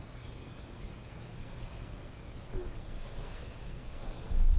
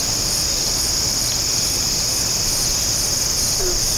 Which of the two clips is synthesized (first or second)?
first